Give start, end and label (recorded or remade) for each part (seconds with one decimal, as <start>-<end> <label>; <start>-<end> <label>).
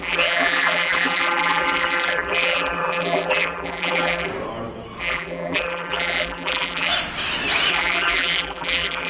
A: 0.0-4.3 remade; 4.3-5.0 recorded; 5.0-6.9 remade; 6.9-7.7 recorded; 7.7-9.1 remade